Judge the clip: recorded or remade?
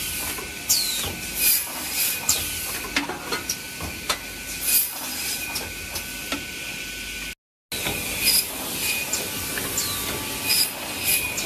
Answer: recorded